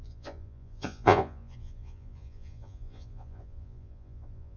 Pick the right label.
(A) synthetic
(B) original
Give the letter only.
A